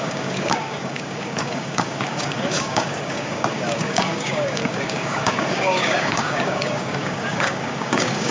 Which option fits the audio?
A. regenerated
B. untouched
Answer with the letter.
A